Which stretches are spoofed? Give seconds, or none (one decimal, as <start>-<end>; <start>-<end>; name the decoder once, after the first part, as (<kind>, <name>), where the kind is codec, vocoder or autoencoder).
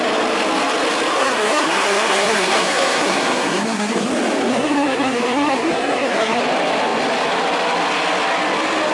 1.2-4.1 (codec, SNAC); 4.5-6.4